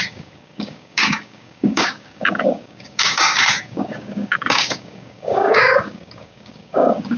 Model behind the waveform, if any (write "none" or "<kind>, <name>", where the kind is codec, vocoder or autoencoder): codec, DAC